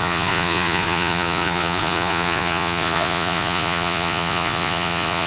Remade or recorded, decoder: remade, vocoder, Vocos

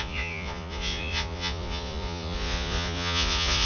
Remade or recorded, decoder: remade, vocoder, Vocos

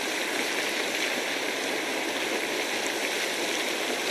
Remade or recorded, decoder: remade, vocoder, BigVGAN v2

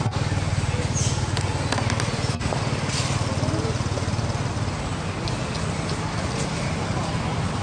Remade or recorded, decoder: recorded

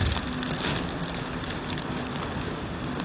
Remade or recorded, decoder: recorded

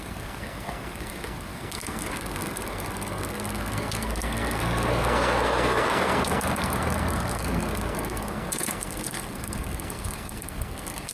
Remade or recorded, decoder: remade, codec, SNAC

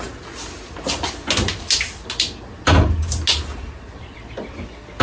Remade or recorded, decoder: recorded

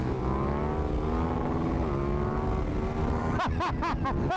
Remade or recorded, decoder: recorded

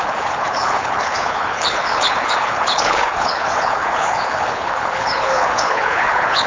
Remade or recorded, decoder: remade, codec, HILCodec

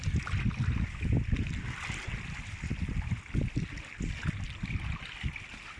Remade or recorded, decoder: recorded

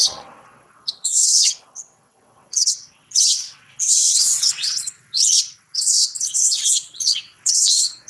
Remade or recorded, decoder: remade, vocoder, WaveNeXt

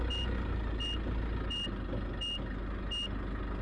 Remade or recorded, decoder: recorded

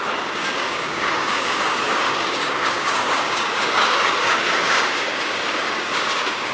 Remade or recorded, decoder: remade, codec, DAC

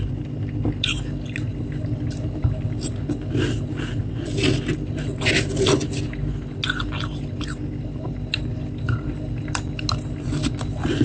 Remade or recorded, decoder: recorded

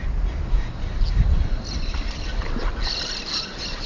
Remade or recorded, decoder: recorded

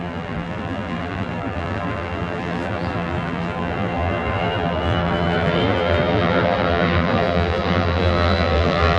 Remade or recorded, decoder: remade, vocoder, BigVGAN v2